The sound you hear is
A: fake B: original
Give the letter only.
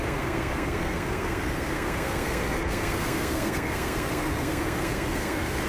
A